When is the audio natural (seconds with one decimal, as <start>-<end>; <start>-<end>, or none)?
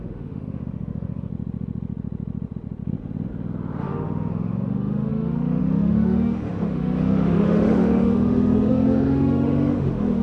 1.3-3.8